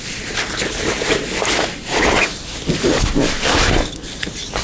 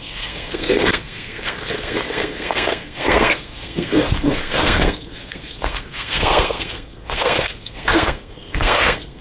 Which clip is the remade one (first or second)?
second